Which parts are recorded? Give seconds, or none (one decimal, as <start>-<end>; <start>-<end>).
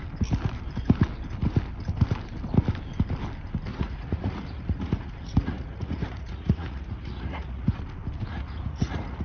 0.0-3.7; 7.8-8.3